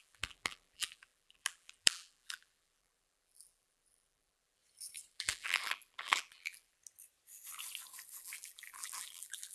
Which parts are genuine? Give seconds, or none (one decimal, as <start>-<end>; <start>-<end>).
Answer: 4.6-5.1; 6.8-8.2

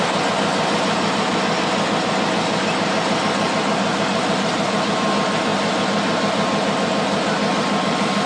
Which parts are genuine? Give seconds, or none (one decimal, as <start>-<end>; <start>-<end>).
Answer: 0.0-8.3

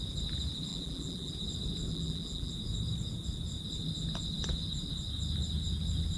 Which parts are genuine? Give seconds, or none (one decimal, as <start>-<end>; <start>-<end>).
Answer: 0.0-0.7; 1.3-1.9; 2.5-6.2

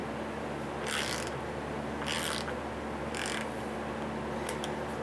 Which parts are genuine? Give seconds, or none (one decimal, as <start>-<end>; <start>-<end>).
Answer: 0.0-5.0